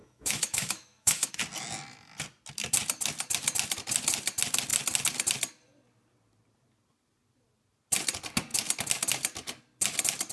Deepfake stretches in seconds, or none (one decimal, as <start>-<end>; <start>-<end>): 0.0-1.3